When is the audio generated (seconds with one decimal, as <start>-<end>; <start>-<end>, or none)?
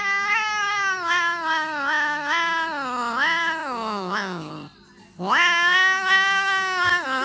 3.6-4.5